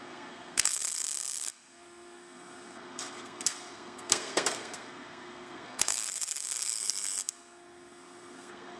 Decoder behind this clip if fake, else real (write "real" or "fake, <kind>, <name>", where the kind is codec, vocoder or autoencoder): fake, codec, SNAC